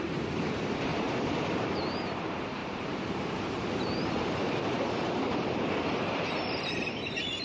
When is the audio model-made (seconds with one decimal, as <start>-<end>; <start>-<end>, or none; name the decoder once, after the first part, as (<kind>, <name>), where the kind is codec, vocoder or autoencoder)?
0.0-0.9 (vocoder, BigVGAN v2); 1.6-7.4